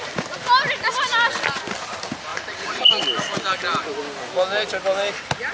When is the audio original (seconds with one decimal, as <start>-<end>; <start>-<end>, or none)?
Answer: 0.0-2.3; 3.0-5.5